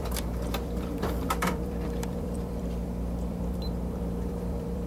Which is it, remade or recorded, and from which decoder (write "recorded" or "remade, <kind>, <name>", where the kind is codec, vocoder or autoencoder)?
remade, vocoder, BigVGAN v2